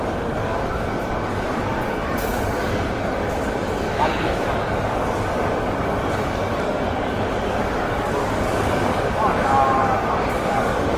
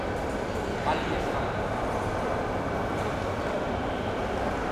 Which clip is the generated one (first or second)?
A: first